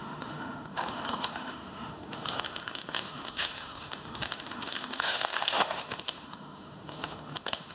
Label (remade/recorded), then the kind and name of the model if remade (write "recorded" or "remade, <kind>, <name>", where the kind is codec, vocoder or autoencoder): remade, autoencoder, DAC-VAE